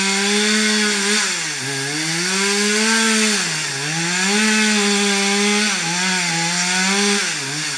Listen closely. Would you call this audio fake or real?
real